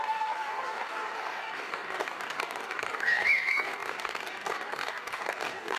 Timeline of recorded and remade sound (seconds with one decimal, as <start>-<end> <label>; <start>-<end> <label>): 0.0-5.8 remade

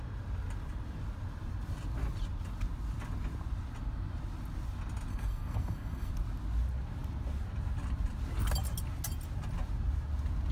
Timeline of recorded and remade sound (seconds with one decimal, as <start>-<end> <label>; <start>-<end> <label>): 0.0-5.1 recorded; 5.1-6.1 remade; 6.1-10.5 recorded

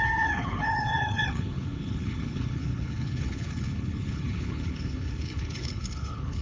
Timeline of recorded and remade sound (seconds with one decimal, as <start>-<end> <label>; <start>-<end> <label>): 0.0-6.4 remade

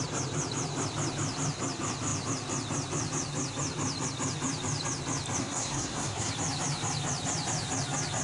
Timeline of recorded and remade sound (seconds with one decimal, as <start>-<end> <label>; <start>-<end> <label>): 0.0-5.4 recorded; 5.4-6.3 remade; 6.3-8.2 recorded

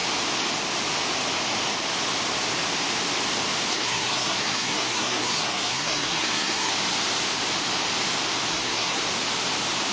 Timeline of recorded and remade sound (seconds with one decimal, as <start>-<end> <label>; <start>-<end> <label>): 0.0-3.7 recorded; 3.7-6.7 remade; 6.7-8.5 recorded; 8.5-9.0 remade; 9.0-9.9 recorded

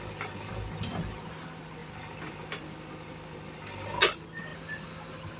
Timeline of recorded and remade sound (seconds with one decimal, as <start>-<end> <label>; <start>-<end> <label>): 0.0-5.4 recorded